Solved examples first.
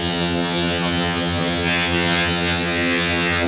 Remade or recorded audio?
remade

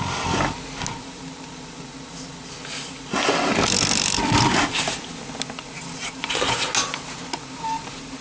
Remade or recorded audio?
recorded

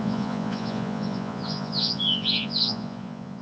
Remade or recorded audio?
remade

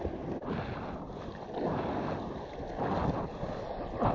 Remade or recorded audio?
recorded